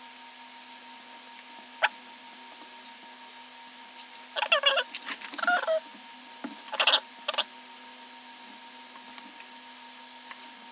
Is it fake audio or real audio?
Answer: real